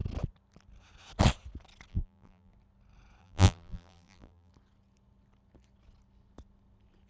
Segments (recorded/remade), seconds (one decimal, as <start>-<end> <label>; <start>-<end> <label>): 0.0-1.9 recorded; 1.9-2.5 remade; 2.5-3.2 recorded; 3.2-4.5 remade; 4.5-7.1 recorded